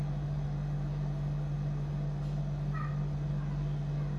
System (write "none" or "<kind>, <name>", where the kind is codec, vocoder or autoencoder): none